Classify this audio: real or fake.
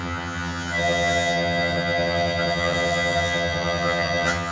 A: fake